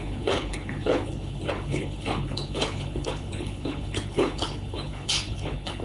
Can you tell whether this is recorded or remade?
remade